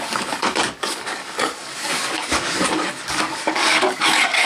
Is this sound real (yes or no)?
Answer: no